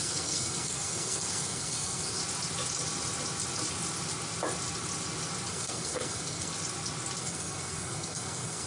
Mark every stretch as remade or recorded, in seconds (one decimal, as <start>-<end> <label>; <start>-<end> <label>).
0.0-2.2 remade; 2.2-5.5 recorded; 5.5-6.5 remade; 6.5-7.2 recorded; 7.2-8.7 remade